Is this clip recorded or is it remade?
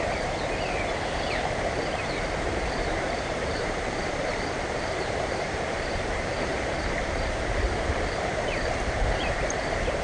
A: remade